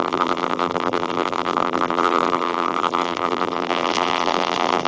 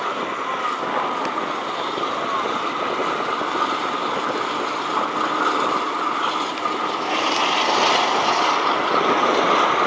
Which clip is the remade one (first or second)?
first